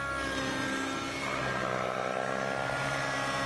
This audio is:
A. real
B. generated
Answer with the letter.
A